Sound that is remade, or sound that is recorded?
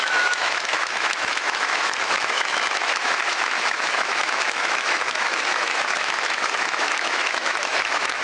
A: remade